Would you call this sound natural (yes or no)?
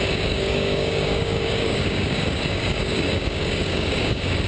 no